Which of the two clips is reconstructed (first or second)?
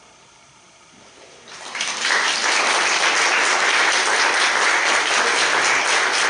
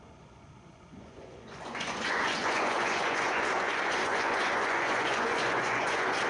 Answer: second